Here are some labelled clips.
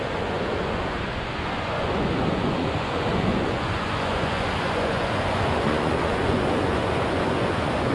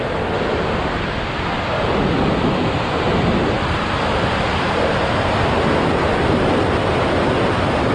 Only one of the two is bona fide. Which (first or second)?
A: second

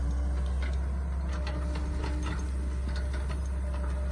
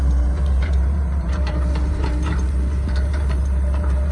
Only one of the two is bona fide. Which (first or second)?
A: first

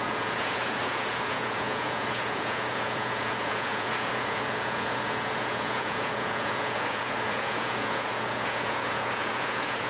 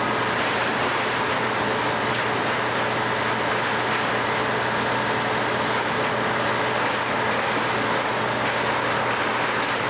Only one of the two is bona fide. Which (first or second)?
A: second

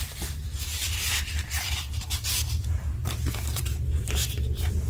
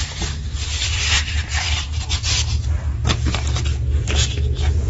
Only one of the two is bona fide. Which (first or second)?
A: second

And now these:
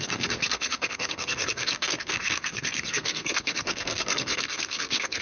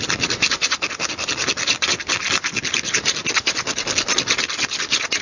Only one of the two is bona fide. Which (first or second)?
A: second